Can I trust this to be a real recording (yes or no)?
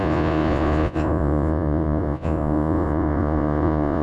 no